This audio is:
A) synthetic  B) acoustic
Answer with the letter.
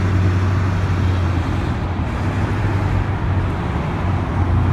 B